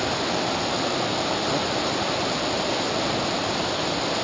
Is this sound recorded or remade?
recorded